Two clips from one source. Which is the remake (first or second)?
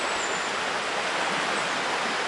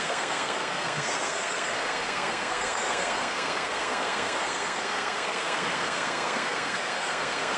second